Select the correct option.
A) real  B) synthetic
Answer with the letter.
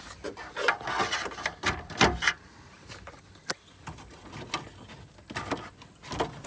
A